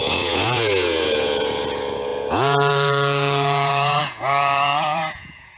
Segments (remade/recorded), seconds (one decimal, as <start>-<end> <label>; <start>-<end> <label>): 0.0-5.6 remade